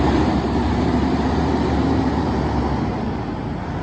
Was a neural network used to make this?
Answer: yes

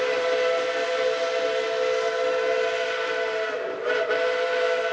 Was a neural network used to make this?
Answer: no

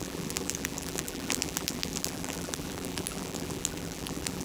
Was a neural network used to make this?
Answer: yes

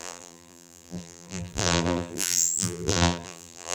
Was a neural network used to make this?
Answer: yes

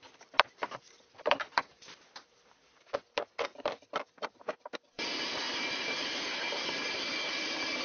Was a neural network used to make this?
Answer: yes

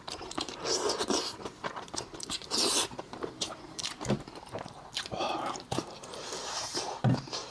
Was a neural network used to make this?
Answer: yes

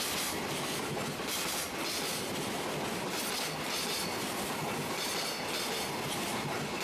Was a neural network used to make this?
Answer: no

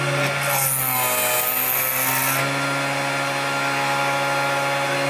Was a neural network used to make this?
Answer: no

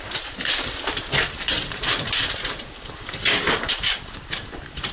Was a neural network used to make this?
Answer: yes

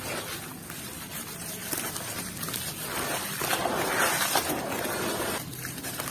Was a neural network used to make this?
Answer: no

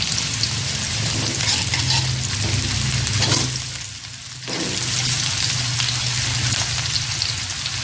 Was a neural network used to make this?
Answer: no